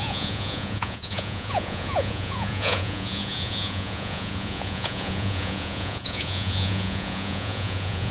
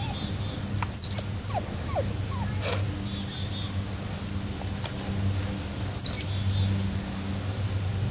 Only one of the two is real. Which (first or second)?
second